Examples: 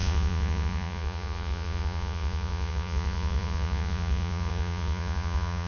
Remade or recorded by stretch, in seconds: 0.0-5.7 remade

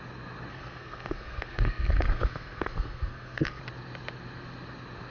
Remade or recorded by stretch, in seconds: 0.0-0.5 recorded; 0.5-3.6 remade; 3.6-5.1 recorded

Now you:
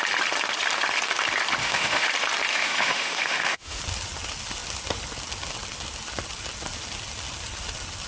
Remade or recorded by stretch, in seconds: 0.0-1.6 recorded; 1.6-2.1 remade; 2.1-2.5 recorded; 2.5-3.8 remade; 3.8-8.1 recorded

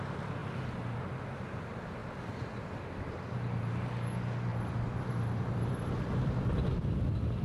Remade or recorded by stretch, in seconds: 0.0-2.0 recorded; 2.0-3.0 remade; 3.0-4.5 recorded; 4.5-6.9 remade; 6.9-7.4 recorded

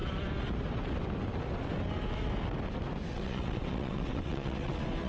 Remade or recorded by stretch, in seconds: 0.0-3.1 recorded; 3.1-5.1 remade

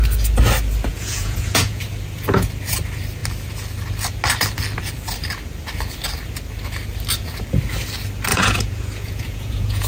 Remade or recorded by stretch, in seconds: 0.0-0.9 recorded; 0.9-1.8 remade; 1.8-8.3 recorded; 8.3-9.9 remade